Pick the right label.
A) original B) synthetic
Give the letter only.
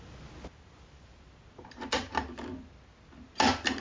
A